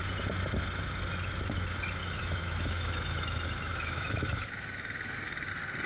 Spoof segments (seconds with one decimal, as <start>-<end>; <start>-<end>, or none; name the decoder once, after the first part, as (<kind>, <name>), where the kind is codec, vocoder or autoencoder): 2.0-5.5 (autoencoder, DAC-VAE)